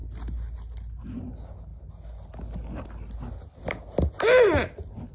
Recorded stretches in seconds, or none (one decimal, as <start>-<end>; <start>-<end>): 0.0-5.1